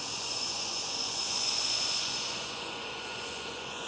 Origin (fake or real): fake